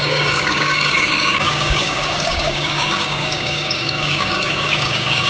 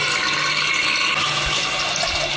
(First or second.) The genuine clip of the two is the second